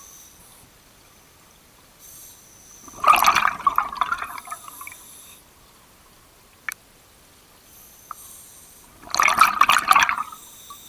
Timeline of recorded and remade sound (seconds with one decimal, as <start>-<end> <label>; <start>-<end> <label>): 0.0-10.9 recorded